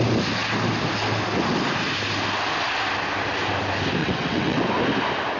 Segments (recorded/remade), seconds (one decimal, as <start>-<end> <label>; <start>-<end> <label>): 0.0-4.0 recorded; 4.0-4.6 remade; 4.6-5.4 recorded

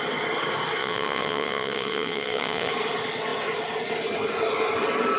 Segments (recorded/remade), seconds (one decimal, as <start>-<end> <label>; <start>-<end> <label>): 0.0-0.8 recorded; 0.8-2.7 remade; 2.7-5.2 recorded

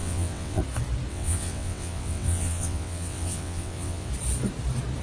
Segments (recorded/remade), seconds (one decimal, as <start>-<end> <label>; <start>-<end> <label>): 0.0-0.6 remade; 0.6-1.1 recorded; 1.1-4.1 remade; 4.1-5.0 recorded

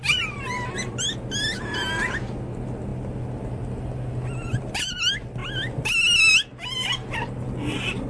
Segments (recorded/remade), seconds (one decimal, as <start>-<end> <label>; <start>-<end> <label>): 0.0-8.1 recorded

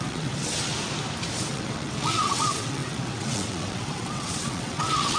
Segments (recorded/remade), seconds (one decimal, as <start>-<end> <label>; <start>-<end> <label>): 0.0-0.7 remade; 0.7-1.5 recorded; 1.5-5.2 remade

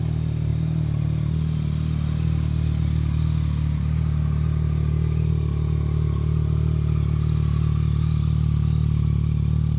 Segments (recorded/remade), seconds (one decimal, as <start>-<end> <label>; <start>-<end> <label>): 0.0-9.8 recorded

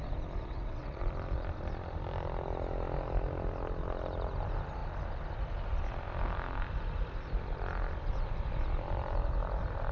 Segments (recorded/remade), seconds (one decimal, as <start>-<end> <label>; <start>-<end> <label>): 0.0-0.4 recorded; 0.4-1.0 remade; 1.0-9.9 recorded

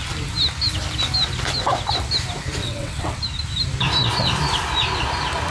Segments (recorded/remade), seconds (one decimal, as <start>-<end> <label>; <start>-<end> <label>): 0.0-2.6 recorded; 2.6-3.2 remade; 3.2-5.5 recorded